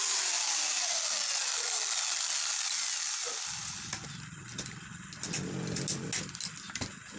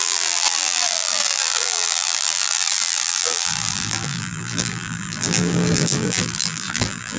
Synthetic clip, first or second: second